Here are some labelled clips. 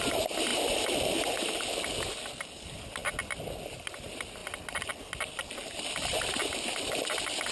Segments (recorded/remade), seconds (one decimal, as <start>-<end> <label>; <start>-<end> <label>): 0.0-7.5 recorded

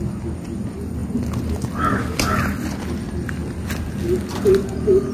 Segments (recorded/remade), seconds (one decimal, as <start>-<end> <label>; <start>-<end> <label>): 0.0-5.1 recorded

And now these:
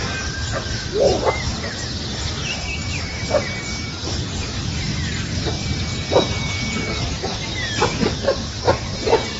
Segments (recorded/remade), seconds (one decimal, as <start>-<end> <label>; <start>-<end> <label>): 0.0-2.8 recorded; 2.8-3.5 remade; 3.5-9.4 recorded

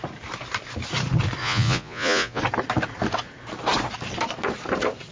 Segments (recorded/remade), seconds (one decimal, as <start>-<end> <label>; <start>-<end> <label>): 0.0-1.4 recorded; 1.4-2.4 remade; 2.4-5.1 recorded